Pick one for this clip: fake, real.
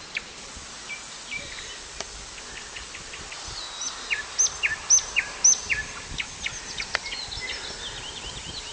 real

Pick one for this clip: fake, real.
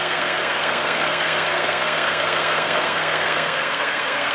fake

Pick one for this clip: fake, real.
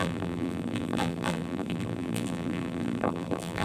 fake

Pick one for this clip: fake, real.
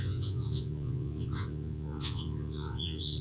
fake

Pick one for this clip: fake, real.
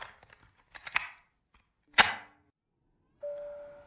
real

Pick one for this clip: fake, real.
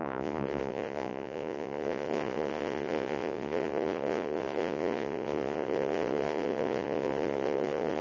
fake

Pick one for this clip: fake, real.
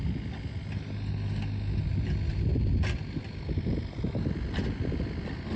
real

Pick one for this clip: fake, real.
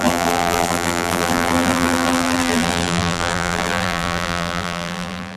fake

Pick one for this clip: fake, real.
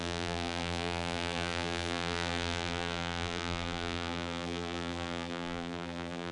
fake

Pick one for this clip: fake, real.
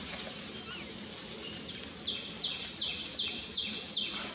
real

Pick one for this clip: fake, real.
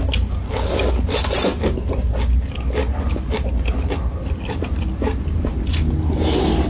real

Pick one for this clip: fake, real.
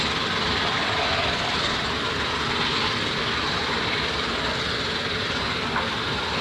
real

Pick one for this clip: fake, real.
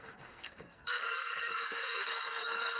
fake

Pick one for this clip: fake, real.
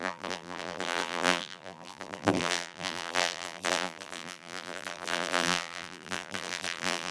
fake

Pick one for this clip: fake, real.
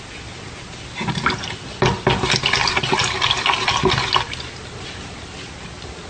real